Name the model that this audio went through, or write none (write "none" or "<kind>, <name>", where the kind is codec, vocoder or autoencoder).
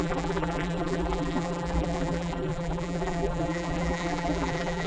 vocoder, BigVGAN v2